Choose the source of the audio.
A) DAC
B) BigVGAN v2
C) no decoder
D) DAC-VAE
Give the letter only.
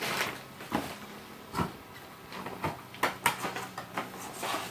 C